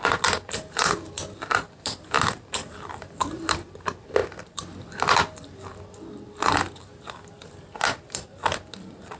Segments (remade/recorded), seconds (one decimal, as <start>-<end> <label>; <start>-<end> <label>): 0.0-9.2 recorded

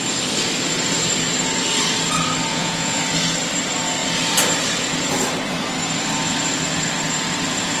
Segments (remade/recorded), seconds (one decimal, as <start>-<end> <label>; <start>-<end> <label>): 0.0-2.5 recorded; 2.5-3.0 remade; 3.0-7.8 recorded

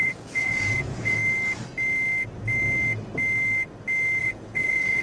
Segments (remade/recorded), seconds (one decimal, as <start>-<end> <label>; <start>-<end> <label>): 0.0-1.2 remade; 1.2-4.2 recorded; 4.2-5.0 remade

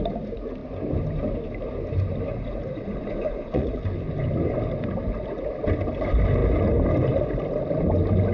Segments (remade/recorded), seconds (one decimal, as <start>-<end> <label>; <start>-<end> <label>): 0.0-2.3 recorded; 2.3-3.8 remade; 3.8-8.3 recorded

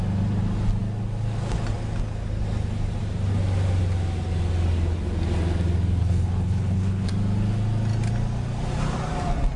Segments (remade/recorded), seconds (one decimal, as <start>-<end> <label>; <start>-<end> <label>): 0.0-6.0 recorded; 6.0-7.1 remade; 7.1-9.6 recorded